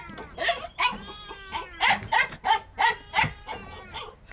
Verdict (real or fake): real